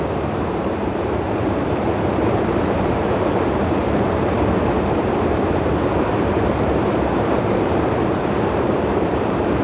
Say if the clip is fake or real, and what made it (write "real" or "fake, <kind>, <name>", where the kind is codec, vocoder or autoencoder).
fake, vocoder, BigVGAN v2